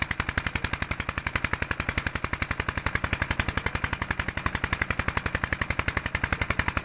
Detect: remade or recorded recorded